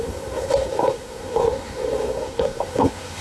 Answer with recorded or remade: remade